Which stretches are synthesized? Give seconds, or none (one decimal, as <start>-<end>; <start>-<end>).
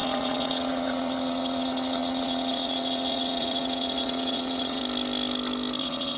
0.0-4.8; 5.8-6.2